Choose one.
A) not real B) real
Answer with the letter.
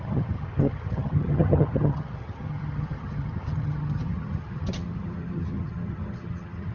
A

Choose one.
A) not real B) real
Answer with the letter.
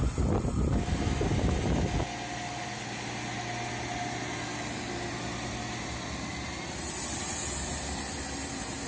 B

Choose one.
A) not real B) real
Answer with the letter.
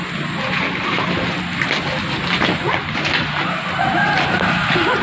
B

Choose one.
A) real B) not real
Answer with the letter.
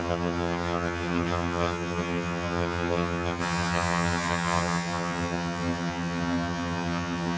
B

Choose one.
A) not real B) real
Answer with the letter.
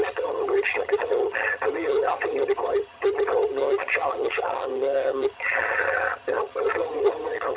A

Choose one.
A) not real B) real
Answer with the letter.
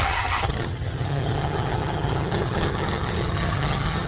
A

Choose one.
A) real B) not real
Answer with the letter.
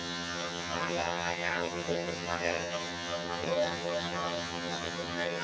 B